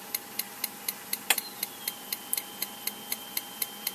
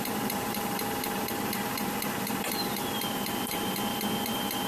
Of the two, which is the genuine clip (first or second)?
first